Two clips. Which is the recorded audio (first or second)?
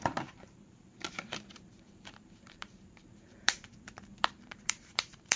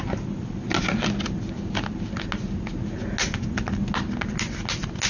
second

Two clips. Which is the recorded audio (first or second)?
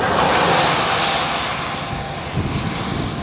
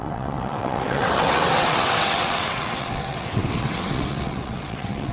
first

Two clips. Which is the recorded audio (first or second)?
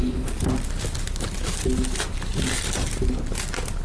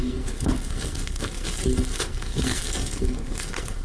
first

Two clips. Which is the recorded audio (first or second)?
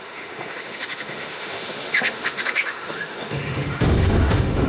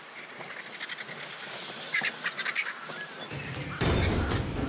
second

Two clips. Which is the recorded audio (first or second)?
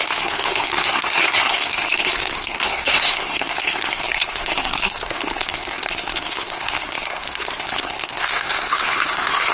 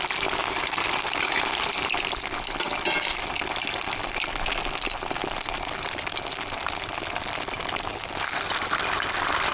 second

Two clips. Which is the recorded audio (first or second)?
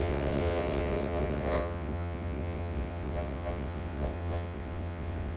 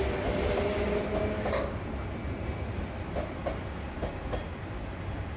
second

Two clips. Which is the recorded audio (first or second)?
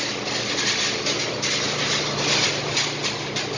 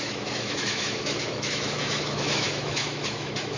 first